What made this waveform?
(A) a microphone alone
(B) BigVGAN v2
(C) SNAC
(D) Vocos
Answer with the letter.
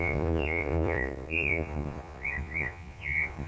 D